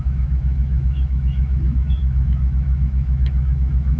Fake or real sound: fake